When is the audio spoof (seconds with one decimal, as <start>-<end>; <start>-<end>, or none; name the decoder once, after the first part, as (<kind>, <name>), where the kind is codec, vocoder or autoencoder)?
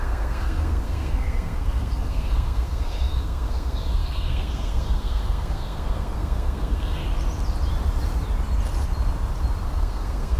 0.0-7.0 (codec, SNAC); 9.7-10.4